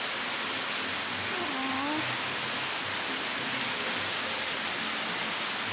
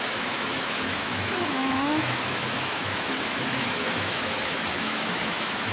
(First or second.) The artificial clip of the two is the second